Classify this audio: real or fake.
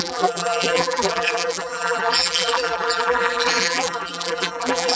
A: fake